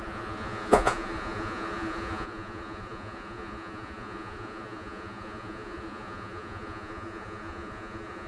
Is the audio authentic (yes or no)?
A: no